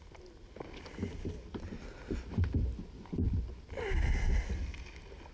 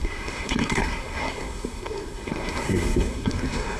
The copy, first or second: second